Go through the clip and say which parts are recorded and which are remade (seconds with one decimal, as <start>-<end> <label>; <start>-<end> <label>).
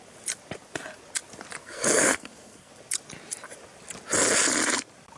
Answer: 0.0-1.6 recorded; 1.6-2.7 remade; 2.7-5.2 recorded